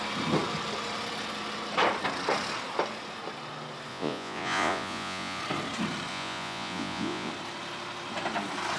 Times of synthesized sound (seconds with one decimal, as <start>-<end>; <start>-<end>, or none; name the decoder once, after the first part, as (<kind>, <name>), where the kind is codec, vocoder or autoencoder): 3.9-5.4 (vocoder, Vocos); 6.1-7.3